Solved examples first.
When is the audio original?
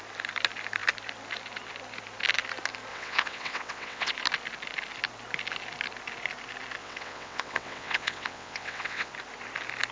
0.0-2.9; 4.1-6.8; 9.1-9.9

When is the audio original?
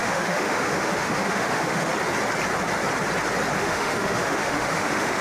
1.9-3.6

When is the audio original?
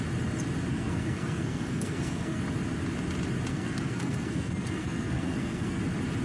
0.0-0.7; 2.4-3.5; 5.8-6.2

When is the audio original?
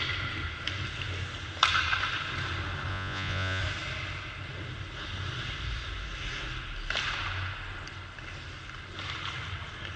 0.0-2.9; 3.6-10.0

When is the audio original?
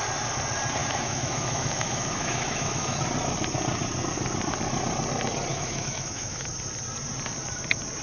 0.0-0.8; 3.0-5.5; 6.5-8.0